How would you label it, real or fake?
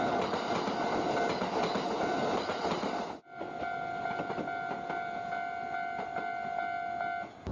real